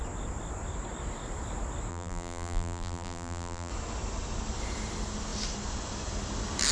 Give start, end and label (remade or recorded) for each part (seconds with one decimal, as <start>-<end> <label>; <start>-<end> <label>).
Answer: 0.0-1.9 recorded; 1.9-3.7 remade; 3.7-6.7 recorded